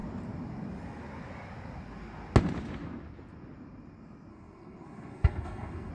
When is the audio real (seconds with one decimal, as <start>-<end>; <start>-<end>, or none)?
0.0-4.3